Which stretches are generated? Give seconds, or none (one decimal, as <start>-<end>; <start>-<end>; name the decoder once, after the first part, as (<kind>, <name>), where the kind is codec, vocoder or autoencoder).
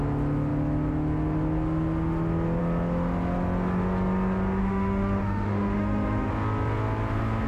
4.6-6.3 (autoencoder, DAC-VAE)